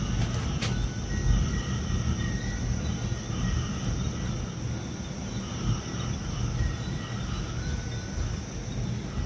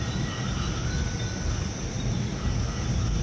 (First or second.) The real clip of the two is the first